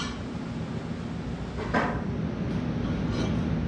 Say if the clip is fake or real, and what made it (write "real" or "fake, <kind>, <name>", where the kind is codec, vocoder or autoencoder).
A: real